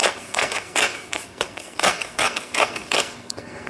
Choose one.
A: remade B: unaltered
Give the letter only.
A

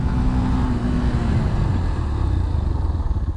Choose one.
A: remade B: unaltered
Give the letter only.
B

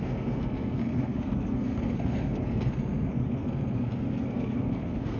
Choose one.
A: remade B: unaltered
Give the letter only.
A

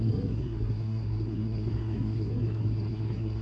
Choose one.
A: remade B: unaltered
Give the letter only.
A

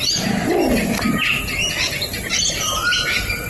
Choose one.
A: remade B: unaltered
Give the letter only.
B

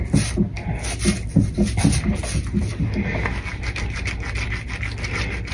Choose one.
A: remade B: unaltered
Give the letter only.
B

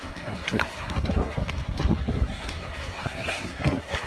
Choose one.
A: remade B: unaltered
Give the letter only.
A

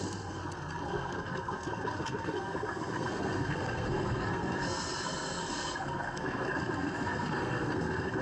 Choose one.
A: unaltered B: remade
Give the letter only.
B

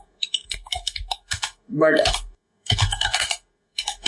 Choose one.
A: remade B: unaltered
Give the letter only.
A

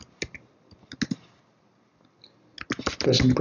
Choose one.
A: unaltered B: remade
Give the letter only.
A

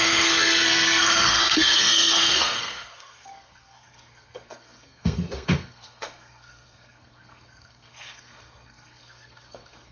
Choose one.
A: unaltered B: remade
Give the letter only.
B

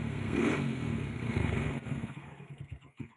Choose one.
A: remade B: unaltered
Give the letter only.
A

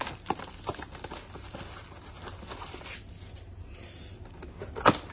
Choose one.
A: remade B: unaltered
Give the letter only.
B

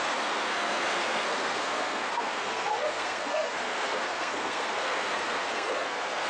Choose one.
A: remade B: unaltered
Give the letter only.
A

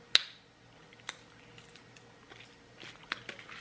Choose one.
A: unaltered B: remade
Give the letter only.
A